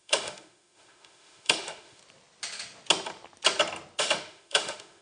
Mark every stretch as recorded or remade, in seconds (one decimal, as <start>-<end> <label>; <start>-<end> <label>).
0.0-2.0 remade; 2.0-4.0 recorded; 4.0-5.0 remade